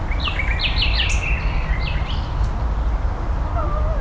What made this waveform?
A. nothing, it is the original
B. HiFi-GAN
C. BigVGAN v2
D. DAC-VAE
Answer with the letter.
A